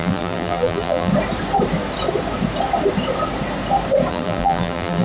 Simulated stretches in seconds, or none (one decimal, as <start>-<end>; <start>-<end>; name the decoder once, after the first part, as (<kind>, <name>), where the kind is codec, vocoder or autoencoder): 0.0-1.1 (vocoder, BigVGAN v2); 4.1-5.0